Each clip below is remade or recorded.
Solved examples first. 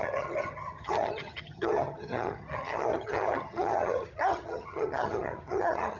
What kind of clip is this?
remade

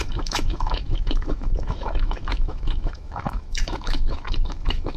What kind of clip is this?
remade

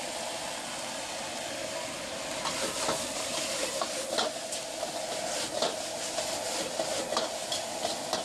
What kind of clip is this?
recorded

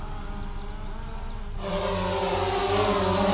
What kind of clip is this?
recorded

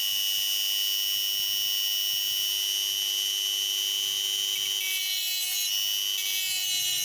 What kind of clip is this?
recorded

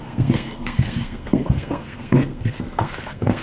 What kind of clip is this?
remade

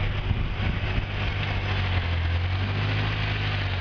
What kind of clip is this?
recorded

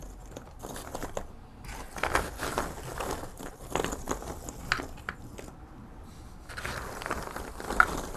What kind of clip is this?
recorded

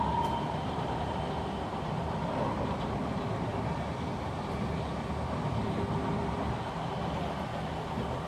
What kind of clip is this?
recorded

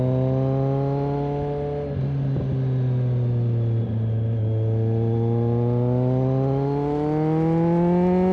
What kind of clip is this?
recorded